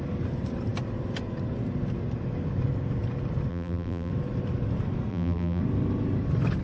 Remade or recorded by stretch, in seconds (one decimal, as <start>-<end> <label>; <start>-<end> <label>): 0.0-3.5 recorded; 3.5-4.1 remade; 4.1-5.1 recorded; 5.1-5.6 remade; 5.6-6.6 recorded